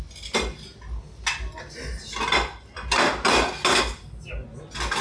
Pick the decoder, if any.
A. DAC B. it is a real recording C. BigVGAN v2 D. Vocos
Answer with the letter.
B